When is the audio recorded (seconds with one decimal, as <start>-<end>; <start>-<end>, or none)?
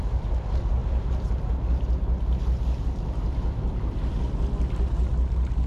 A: 0.0-5.7